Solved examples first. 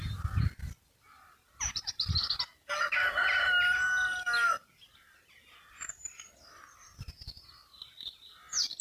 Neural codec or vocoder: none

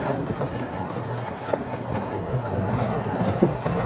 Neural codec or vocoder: codec, SNAC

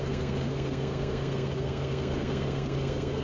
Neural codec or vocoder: codec, SNAC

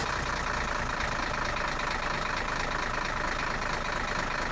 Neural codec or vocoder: none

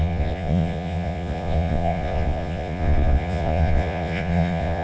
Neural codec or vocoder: vocoder, Vocos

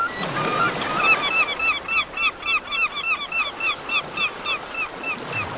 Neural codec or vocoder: none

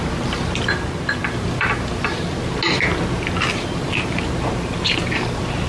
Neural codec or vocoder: none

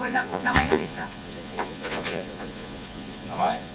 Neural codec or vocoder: vocoder, Vocos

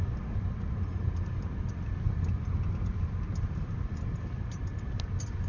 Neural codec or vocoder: none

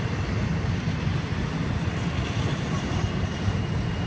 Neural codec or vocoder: none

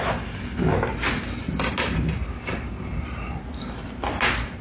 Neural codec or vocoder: none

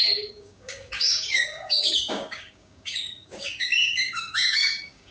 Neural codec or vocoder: codec, DAC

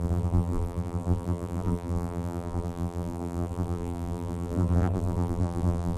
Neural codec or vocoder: vocoder, BigVGAN v2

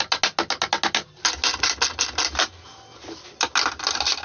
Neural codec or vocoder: none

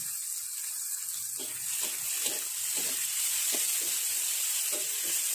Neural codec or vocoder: none